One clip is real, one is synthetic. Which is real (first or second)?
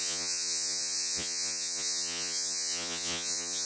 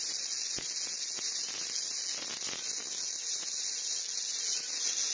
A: second